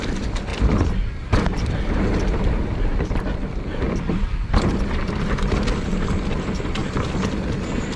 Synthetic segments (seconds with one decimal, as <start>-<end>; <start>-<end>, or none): none